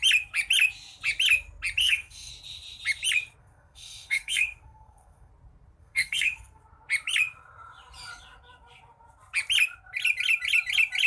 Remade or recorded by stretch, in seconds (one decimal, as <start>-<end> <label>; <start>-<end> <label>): 0.0-1.8 recorded; 1.8-2.3 remade; 2.3-3.4 recorded; 3.4-5.3 remade; 5.3-5.8 recorded; 5.8-6.6 remade; 6.6-11.1 recorded